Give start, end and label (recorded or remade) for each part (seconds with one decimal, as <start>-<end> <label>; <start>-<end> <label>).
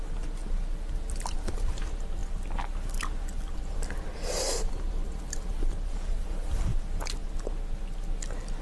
0.0-4.5 recorded; 4.5-5.5 remade; 5.5-8.6 recorded